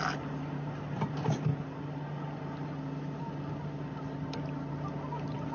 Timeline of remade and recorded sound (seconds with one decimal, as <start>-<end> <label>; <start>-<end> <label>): 0.0-5.5 recorded